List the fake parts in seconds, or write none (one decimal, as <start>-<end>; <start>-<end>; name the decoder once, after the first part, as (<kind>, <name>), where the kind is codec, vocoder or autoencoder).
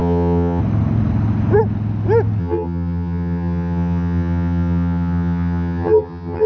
0.0-0.6 (vocoder, HiFi-GAN); 2.4-6.5